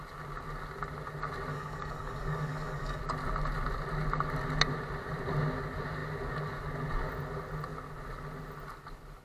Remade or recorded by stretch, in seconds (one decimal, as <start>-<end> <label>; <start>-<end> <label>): 0.0-1.5 recorded; 1.5-3.0 remade; 3.0-9.2 recorded